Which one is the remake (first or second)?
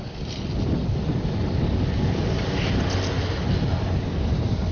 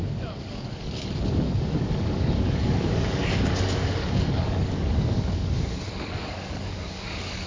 second